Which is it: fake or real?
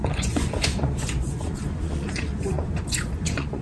fake